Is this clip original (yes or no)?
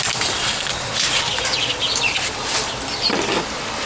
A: yes